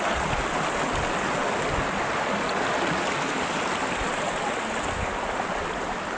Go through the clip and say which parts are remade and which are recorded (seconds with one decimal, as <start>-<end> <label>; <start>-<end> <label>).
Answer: 0.0-6.2 recorded